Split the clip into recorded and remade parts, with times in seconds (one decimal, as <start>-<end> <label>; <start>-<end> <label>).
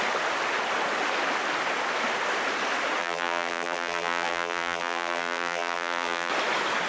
0.0-3.0 recorded; 3.0-6.3 remade; 6.3-6.9 recorded